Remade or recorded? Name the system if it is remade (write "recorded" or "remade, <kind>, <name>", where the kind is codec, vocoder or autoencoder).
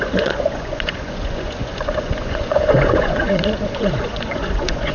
remade, vocoder, Vocos